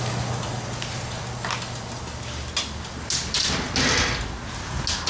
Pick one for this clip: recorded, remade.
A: recorded